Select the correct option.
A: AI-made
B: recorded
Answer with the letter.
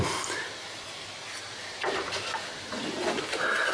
B